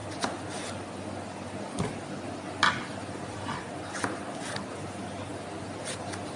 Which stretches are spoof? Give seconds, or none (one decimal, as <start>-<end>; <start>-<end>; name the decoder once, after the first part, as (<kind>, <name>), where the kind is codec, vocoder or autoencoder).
none